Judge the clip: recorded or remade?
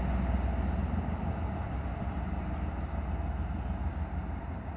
recorded